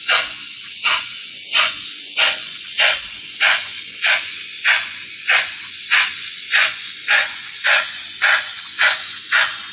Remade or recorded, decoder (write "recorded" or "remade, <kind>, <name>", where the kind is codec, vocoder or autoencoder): remade, vocoder, Vocos